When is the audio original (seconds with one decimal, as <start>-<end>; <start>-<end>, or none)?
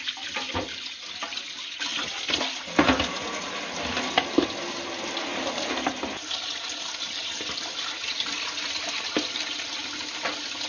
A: 0.0-10.7